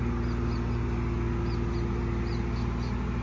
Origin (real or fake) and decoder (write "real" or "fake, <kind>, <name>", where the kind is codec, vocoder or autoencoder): real